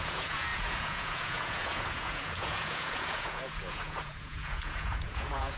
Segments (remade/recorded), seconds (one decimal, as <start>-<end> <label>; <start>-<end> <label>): 0.0-5.6 remade